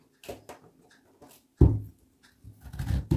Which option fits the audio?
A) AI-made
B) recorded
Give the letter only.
B